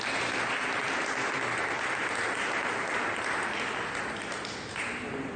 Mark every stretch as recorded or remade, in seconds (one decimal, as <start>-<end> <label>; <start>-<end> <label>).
0.0-5.4 recorded